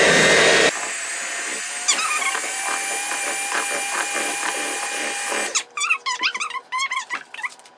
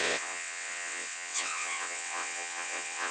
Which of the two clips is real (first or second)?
first